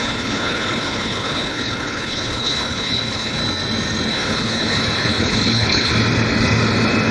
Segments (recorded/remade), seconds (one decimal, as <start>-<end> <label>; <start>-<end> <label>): 0.0-3.4 remade; 3.4-4.1 recorded; 4.1-5.9 remade; 5.9-7.1 recorded